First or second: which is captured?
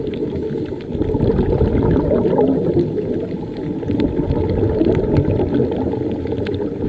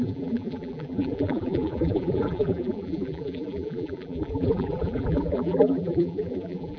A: first